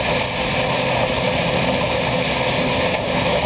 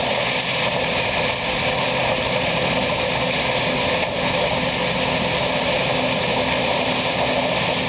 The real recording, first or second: first